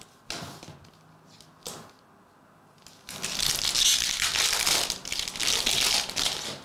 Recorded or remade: recorded